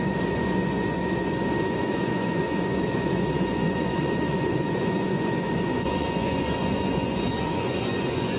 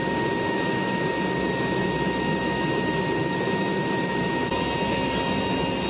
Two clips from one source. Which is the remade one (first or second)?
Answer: first